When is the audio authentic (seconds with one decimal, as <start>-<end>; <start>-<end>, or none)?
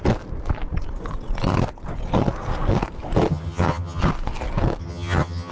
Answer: 0.0-3.3; 4.0-4.8